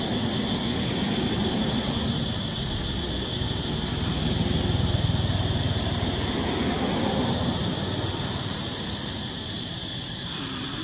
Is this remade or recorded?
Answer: recorded